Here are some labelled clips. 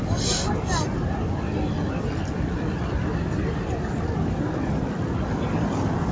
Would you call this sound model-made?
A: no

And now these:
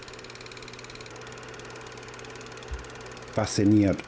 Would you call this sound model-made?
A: no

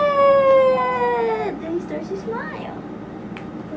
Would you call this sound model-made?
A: no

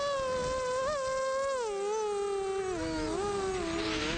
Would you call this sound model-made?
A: no